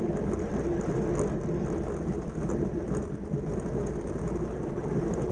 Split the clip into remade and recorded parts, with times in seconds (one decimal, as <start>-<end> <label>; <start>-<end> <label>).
0.0-5.3 recorded